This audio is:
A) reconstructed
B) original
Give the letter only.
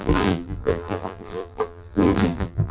A